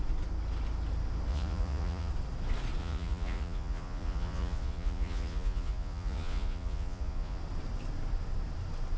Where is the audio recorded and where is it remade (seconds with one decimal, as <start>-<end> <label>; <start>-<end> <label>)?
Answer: 0.0-1.3 recorded; 1.3-2.1 remade; 2.1-2.8 recorded; 2.8-7.4 remade; 7.4-9.0 recorded